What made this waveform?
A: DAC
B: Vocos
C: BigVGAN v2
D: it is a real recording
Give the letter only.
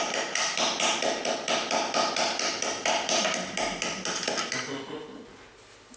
D